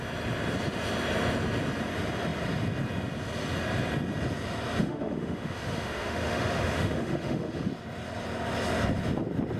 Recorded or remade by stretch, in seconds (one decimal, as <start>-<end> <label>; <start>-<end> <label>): 0.0-4.8 recorded; 4.8-7.7 remade; 7.7-9.6 recorded